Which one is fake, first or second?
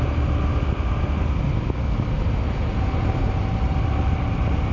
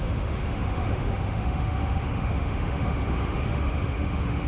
second